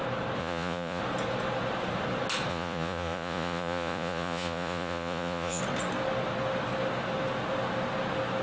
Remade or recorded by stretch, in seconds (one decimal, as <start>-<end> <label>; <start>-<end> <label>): 0.0-0.4 recorded; 0.4-1.0 remade; 1.0-2.5 recorded; 2.5-5.6 remade; 5.6-8.4 recorded

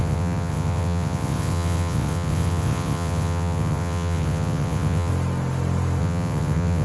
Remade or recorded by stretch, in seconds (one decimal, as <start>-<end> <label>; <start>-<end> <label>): 0.0-5.1 remade; 5.1-6.0 recorded; 6.0-6.8 remade

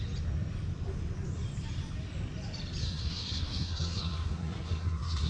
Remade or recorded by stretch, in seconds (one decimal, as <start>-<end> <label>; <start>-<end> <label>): 0.0-2.8 recorded; 2.8-5.3 remade

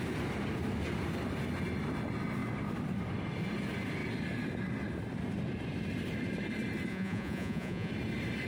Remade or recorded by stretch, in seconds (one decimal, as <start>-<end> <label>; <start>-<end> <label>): 0.0-6.9 recorded; 6.9-7.9 remade; 7.9-8.5 recorded